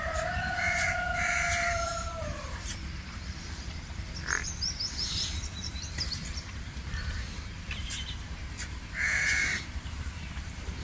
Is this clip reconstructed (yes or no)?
yes